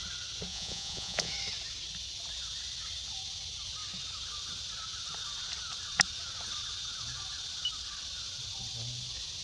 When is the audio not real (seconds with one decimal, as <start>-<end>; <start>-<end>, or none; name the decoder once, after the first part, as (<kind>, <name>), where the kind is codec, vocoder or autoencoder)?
0.5-1.3 (vocoder, Vocos)